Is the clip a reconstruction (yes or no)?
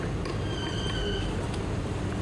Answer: no